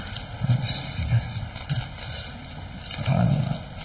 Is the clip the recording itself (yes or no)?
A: yes